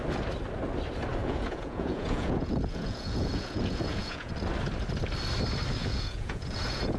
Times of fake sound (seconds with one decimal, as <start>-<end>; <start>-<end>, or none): 1.2-4.3; 5.8-7.0